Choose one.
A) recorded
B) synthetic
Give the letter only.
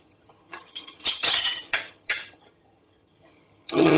B